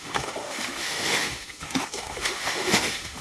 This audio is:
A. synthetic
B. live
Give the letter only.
A